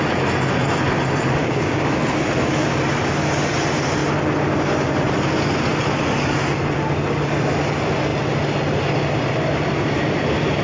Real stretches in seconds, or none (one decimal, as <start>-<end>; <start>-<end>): 0.0-1.4; 1.9-10.6